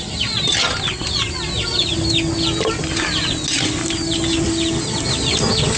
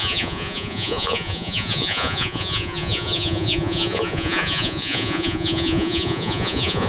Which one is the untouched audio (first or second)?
first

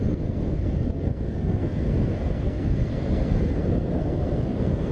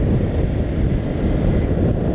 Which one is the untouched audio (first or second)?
second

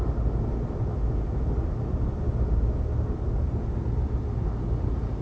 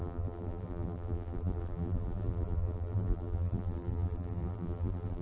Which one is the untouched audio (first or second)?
first